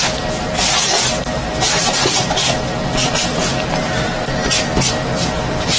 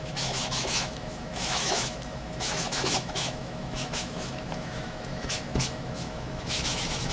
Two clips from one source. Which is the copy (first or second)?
second